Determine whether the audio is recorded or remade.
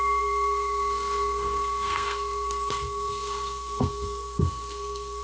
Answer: remade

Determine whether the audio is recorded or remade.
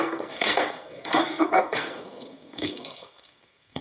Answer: remade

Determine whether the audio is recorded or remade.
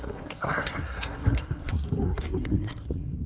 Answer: remade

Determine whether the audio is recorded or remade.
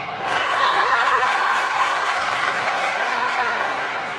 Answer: remade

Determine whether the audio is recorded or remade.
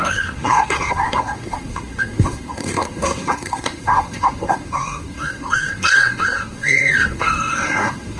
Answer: remade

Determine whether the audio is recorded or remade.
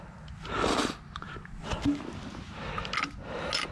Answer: recorded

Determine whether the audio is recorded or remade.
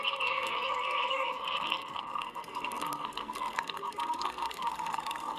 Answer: remade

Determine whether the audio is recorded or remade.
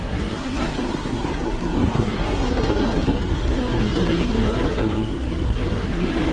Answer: remade